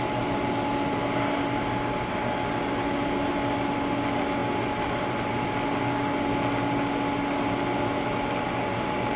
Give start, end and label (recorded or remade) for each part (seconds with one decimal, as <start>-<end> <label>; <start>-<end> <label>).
0.0-9.2 recorded